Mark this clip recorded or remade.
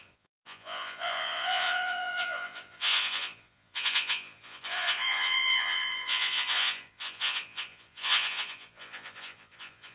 remade